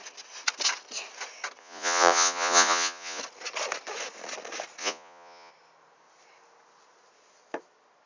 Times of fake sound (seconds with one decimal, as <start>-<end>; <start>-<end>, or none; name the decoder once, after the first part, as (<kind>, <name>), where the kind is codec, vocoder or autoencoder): 1.6-3.2 (vocoder, Vocos); 4.8-5.5